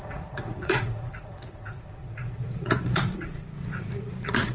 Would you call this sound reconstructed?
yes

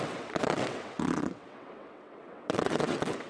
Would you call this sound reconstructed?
yes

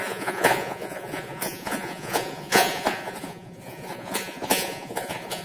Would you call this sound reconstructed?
yes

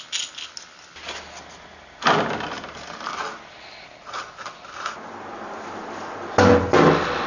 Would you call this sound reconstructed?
no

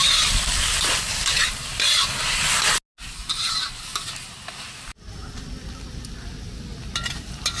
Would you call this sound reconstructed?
no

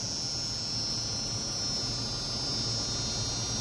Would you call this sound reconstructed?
no